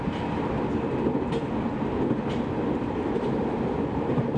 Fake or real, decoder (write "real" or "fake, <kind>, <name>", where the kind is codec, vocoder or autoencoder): real